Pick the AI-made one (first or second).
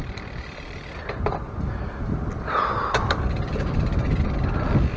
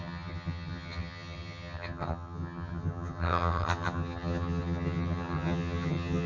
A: second